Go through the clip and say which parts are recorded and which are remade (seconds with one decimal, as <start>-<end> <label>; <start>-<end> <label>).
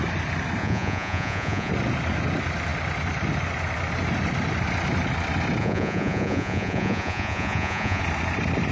0.0-0.6 recorded; 0.6-1.7 remade; 1.7-5.6 recorded; 5.6-8.0 remade; 8.0-8.7 recorded